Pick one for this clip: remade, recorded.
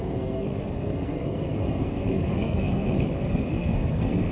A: remade